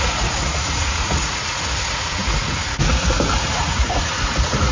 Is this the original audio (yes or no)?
no